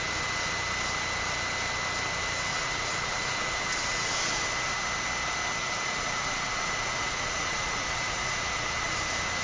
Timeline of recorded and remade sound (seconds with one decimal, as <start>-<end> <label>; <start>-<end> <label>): 0.0-2.5 recorded; 2.5-4.4 remade; 4.4-5.6 recorded; 5.6-9.0 remade; 9.0-9.4 recorded